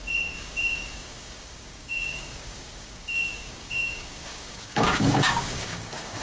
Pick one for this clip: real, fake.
fake